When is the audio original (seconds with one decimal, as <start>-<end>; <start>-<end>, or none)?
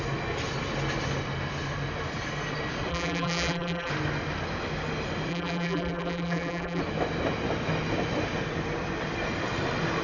0.0-2.9; 3.9-5.3; 6.8-10.0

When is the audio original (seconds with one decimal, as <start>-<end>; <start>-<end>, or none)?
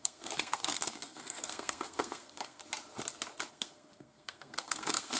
2.6-3.5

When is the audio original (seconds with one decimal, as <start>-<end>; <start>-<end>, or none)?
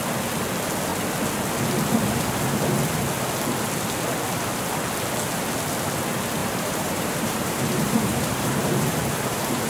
0.0-6.4